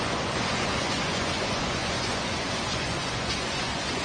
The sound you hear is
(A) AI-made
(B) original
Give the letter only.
A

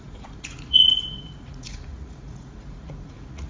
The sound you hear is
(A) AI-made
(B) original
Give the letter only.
A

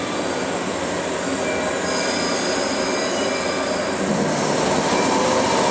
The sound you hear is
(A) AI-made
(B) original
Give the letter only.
B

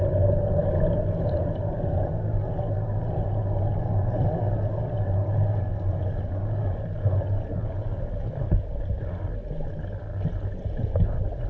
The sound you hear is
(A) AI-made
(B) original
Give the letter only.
B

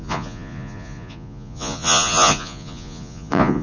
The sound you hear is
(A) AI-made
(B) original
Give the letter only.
A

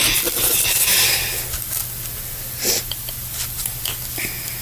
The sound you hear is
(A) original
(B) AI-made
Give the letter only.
A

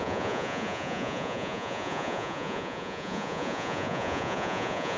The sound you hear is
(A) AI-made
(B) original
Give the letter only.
A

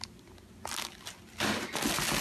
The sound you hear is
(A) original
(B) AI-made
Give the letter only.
A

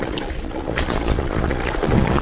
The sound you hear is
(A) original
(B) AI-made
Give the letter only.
B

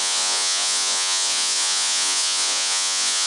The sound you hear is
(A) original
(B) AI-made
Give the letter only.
B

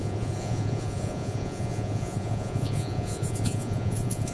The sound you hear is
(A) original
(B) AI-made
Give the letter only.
B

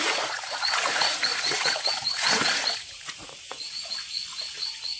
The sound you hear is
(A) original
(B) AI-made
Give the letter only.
B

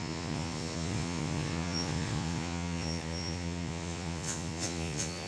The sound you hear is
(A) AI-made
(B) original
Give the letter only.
A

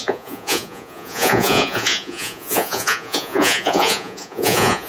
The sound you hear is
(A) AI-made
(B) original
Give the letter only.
A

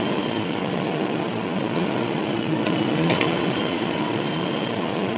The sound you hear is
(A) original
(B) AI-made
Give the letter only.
B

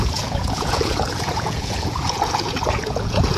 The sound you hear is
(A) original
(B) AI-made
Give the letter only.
B